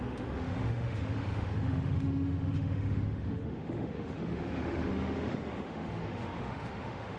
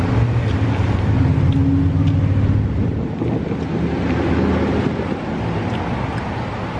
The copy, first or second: first